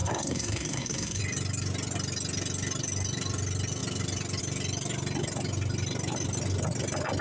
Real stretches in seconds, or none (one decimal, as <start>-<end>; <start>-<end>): 1.2-7.2